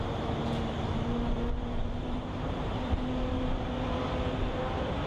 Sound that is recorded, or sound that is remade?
remade